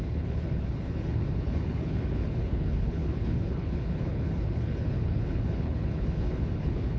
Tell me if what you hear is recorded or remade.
remade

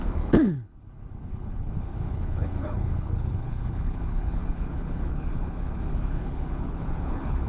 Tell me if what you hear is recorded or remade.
remade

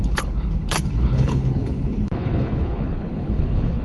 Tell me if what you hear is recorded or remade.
remade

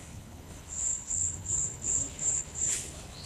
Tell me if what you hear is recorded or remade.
remade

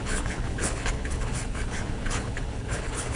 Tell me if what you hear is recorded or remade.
remade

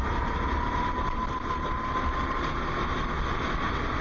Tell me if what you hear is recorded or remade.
recorded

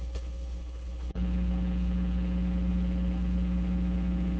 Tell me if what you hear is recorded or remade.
remade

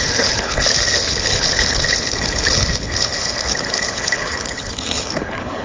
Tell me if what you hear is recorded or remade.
remade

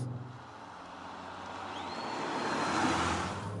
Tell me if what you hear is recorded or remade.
recorded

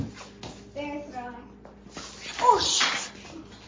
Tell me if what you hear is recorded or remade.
recorded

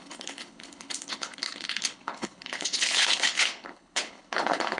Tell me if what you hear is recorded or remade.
remade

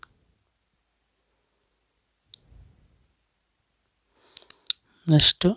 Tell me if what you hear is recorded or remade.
recorded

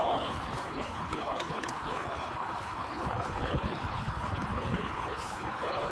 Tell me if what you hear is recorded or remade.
remade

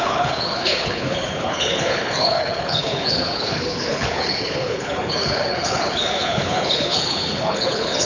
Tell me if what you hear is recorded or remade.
remade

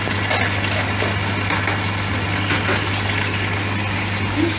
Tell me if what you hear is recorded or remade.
recorded